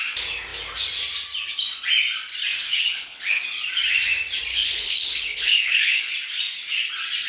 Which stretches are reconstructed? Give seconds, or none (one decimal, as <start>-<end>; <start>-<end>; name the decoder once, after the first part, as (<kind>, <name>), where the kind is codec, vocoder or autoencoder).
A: 2.7-3.4 (codec, HILCodec); 4.5-6.1